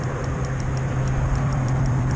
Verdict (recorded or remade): remade